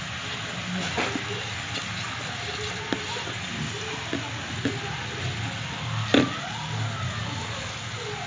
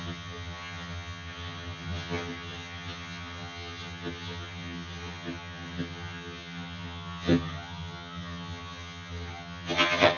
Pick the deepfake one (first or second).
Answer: second